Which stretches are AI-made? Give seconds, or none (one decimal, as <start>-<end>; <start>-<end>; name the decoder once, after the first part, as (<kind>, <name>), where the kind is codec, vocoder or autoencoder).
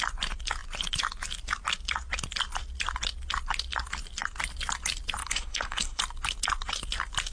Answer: 5.2-6.0 (codec, HILCodec)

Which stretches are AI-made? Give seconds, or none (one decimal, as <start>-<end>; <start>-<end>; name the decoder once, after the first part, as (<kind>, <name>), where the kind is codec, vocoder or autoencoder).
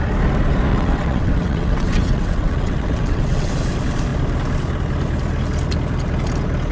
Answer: 0.7-3.5 (vocoder, WaveNeXt)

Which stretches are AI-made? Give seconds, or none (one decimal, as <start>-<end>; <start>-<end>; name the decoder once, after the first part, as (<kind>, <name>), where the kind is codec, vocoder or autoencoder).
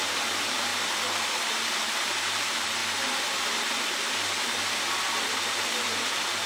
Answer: 0.0-0.7 (vocoder, BigVGAN v2); 1.9-2.8; 5.3-6.5